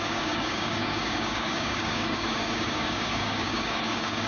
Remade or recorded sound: remade